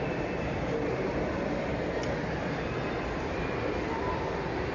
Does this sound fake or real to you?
real